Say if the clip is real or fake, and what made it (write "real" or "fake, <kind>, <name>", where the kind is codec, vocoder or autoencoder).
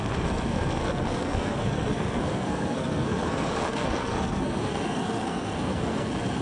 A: fake, codec, SNAC